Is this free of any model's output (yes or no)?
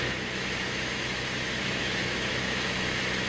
no